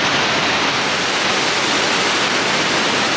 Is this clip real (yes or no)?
yes